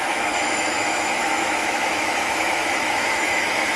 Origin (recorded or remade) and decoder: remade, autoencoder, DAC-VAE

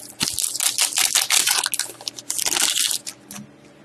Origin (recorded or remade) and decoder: recorded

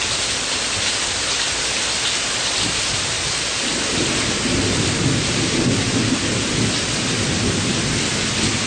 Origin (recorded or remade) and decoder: recorded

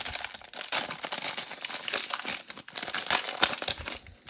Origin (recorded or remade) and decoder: recorded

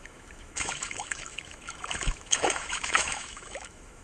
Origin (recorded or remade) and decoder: remade, autoencoder, DAC-VAE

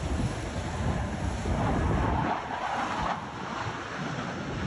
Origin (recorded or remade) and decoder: recorded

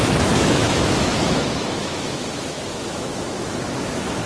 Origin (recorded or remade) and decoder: remade, autoencoder, DAC-VAE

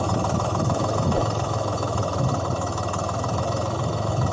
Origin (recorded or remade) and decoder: remade, autoencoder, DAC-VAE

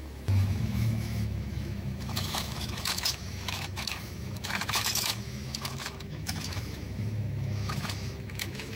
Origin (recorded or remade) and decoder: remade, autoencoder, DAC-VAE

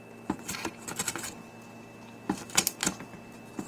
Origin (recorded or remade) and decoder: recorded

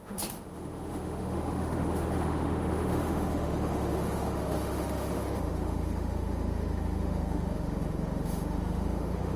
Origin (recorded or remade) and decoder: remade, autoencoder, DAC-VAE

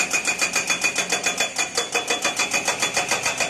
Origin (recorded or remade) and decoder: recorded